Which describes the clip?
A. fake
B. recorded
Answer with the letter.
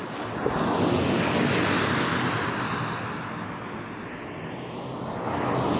B